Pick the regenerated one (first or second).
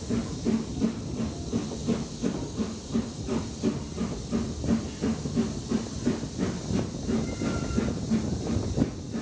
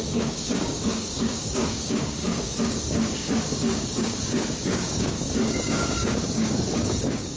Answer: second